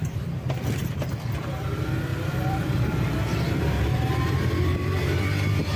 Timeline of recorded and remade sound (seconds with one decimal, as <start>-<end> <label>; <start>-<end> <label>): 0.0-1.0 remade; 1.0-2.1 recorded; 2.1-5.2 remade; 5.2-5.8 recorded